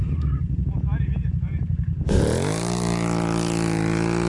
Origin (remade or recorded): recorded